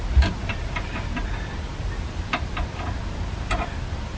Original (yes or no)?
yes